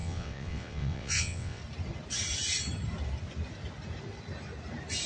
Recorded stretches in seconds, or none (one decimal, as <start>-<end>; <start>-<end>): 1.6-5.1